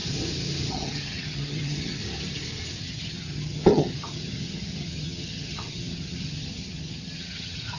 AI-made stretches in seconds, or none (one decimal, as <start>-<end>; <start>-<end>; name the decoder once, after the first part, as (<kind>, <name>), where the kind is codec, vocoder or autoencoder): 0.7-2.0 (vocoder, HiFi-GAN); 2.8-7.8